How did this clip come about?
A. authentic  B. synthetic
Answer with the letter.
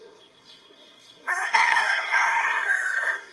B